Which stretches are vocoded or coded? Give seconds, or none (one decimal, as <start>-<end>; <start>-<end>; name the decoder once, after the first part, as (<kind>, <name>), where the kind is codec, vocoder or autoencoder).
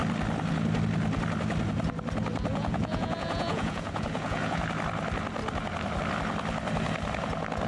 2.5-4.6 (vocoder, Vocos)